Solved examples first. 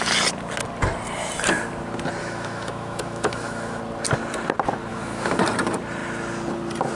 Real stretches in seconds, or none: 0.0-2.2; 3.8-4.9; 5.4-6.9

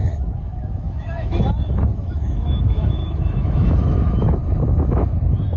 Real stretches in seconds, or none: 1.4-1.9; 5.1-5.6

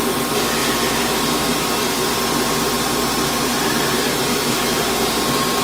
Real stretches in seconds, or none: 0.0-4.3; 4.8-5.6

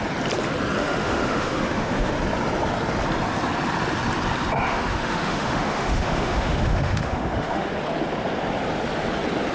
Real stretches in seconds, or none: 0.0-0.8; 2.1-4.7; 7.7-9.5

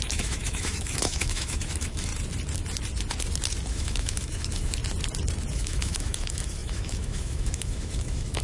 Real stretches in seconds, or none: 2.1-3.7; 4.8-5.5

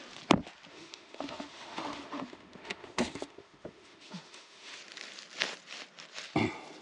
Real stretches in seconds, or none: 0.0-0.7; 4.8-6.8

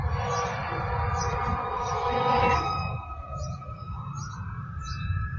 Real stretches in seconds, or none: 0.0-1.6; 4.0-5.4